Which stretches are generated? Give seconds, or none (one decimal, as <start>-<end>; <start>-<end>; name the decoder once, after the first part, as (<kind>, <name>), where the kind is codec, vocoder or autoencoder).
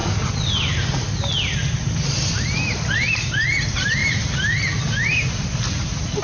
3.6-4.0 (vocoder, BigVGAN v2); 5.0-6.2